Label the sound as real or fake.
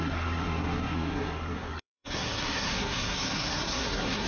fake